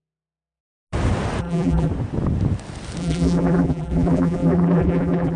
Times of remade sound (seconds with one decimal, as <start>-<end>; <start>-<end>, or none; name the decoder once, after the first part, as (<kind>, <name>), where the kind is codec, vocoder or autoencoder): 0.0-0.6 (vocoder, BigVGAN v2); 1.4-1.9; 3.0-5.4